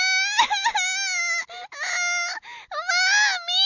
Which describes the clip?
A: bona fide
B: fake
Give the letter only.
A